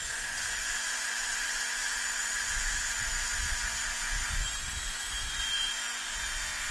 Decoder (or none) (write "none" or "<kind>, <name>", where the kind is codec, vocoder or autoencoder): vocoder, Vocos